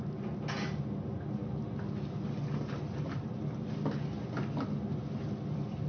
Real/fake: real